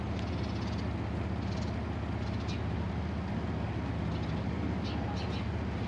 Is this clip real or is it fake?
real